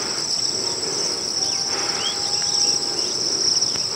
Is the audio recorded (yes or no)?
yes